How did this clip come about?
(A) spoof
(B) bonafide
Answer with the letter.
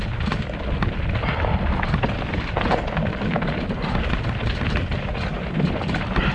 B